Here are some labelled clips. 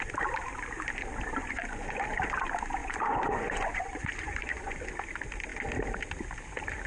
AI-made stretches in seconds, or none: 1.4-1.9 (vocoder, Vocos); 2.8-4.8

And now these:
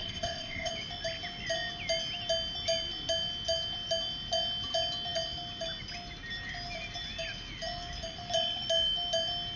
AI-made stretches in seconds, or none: 0.0-0.7 (codec, ZipCodec)

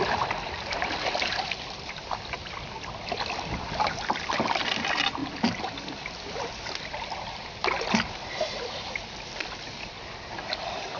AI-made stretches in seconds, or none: none

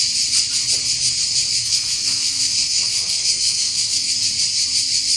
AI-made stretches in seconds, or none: 1.6-4.1 (codec, SNAC)